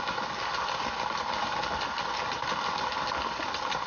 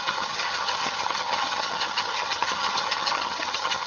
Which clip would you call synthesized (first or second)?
second